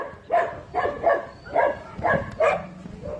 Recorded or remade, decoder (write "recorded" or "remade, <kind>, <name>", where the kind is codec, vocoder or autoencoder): recorded